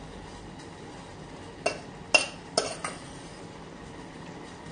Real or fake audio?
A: real